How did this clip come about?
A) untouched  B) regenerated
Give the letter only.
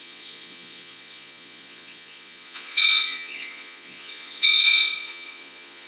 B